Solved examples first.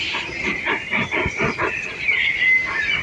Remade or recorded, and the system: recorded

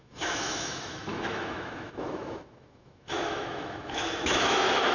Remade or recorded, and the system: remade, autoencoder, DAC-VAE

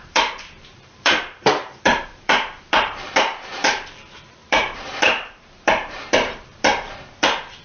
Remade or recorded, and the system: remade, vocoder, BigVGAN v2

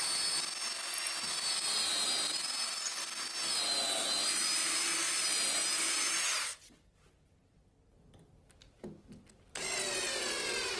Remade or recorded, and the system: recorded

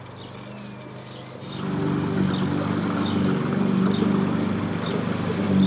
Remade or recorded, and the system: recorded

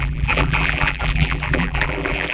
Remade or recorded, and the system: remade, vocoder, BigVGAN v2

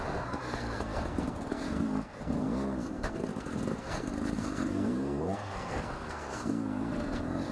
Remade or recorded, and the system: remade, codec, SNAC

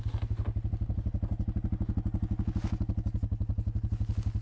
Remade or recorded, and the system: recorded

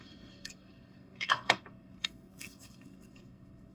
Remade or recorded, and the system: remade, codec, SNAC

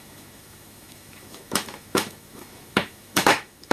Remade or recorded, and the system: remade, autoencoder, DAC-VAE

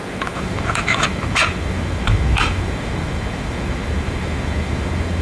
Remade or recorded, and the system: remade, autoencoder, DAC-VAE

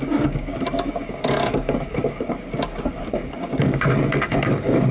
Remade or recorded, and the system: remade, codec, DAC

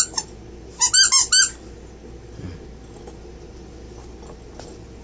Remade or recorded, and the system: recorded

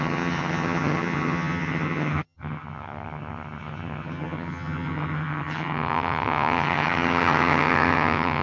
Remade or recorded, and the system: remade, vocoder, HiFi-GAN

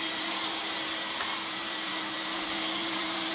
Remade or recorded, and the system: remade, vocoder, BigVGAN v2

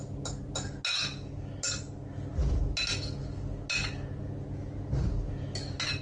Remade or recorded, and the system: recorded